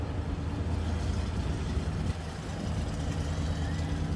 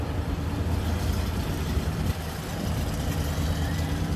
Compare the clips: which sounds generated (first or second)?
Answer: second